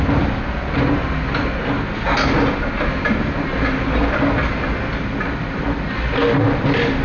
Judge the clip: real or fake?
real